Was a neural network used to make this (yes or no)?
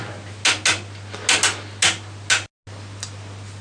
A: no